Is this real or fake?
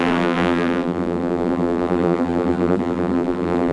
fake